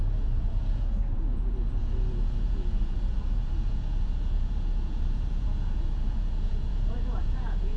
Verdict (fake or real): fake